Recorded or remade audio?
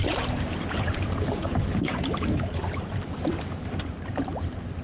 remade